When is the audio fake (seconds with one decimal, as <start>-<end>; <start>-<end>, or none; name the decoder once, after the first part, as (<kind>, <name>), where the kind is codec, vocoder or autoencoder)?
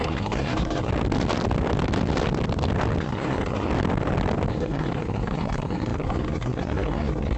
0.0-0.9 (codec, SNAC); 3.0-3.7; 4.5-7.4